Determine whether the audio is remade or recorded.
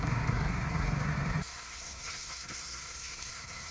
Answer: remade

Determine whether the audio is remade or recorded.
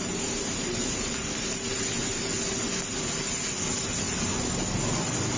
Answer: recorded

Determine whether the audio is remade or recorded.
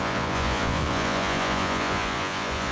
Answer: remade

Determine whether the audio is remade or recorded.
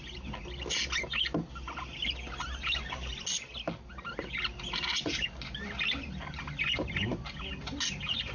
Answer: recorded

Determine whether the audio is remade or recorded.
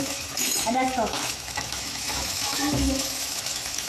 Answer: remade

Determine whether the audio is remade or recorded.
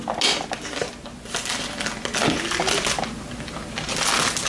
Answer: recorded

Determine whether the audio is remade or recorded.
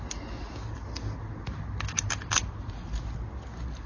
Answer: recorded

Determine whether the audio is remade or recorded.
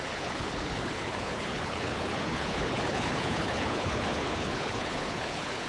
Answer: remade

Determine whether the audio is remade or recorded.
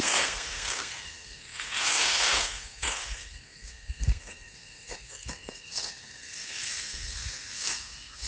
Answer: remade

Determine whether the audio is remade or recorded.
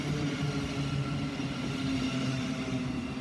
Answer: recorded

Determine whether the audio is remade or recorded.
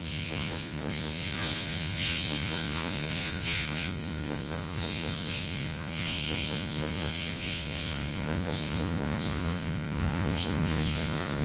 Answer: remade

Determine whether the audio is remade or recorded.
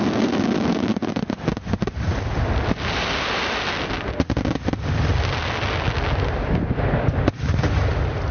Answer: recorded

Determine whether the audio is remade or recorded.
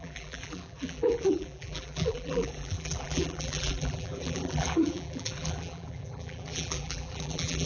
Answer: remade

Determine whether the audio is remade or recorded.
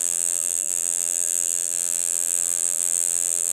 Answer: remade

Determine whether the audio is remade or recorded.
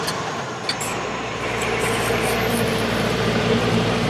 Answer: remade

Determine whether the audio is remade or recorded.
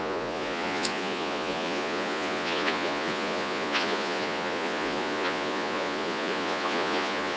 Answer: remade